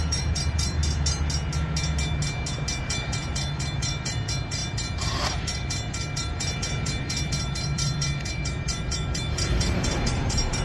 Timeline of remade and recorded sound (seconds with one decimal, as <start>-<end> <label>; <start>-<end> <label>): 0.0-0.8 remade; 0.8-2.8 recorded; 2.8-10.6 remade

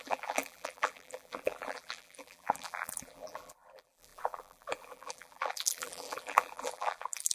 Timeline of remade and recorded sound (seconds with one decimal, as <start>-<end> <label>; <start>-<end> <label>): 0.0-7.3 remade

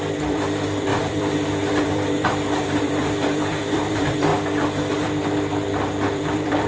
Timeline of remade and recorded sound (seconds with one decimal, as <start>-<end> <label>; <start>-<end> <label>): 0.0-4.3 remade; 4.3-4.9 recorded; 4.9-6.7 remade

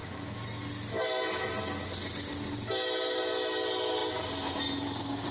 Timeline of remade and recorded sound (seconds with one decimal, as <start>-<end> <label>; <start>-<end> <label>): 0.0-5.3 recorded

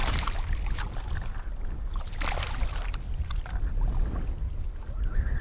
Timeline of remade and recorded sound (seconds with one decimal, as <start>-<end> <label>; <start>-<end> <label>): 0.0-3.2 remade; 3.2-5.4 recorded

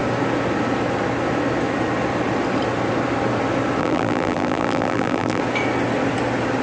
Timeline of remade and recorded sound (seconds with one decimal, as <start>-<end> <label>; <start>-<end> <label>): 0.0-3.8 recorded; 3.8-5.4 remade; 5.4-6.6 recorded

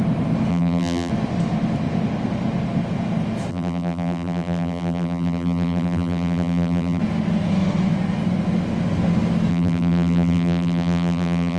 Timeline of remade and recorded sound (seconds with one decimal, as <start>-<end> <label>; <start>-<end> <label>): 0.0-0.5 recorded; 0.5-1.1 remade; 1.1-3.5 recorded; 3.5-7.0 remade; 7.0-9.5 recorded; 9.5-11.6 remade

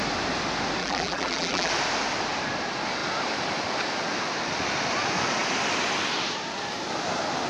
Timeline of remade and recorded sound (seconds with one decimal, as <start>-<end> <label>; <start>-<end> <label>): 0.0-0.8 recorded; 0.8-1.7 remade; 1.7-7.5 recorded